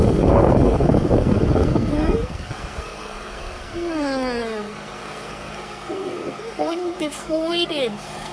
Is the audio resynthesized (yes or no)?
yes